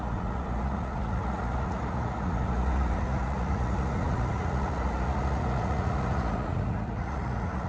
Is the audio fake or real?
fake